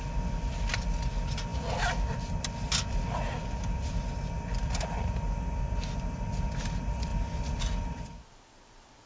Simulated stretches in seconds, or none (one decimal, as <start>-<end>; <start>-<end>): none